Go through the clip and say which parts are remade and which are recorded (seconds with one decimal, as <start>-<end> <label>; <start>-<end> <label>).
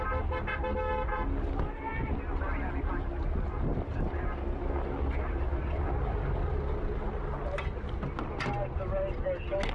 0.0-9.7 recorded